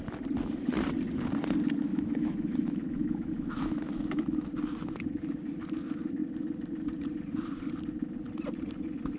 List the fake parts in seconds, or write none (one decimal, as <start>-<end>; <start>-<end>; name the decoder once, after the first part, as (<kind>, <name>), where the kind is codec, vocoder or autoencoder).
1.9-4.5 (autoencoder, DAC-VAE)

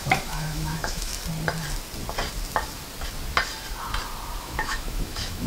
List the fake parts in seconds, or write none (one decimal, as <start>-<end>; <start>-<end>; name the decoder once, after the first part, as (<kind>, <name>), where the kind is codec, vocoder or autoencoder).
0.0-1.1 (autoencoder, DAC-VAE); 4.4-5.5